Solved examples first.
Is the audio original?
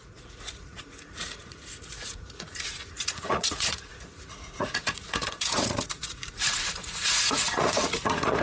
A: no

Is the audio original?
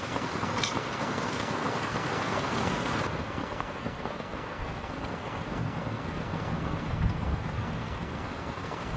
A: no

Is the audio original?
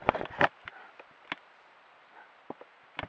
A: yes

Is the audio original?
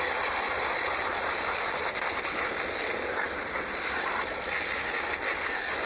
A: yes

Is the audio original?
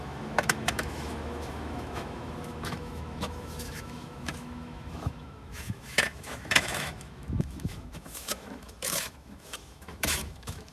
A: no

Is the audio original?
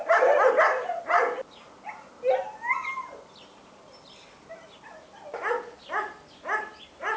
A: yes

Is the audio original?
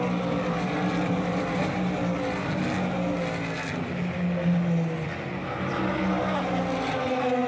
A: yes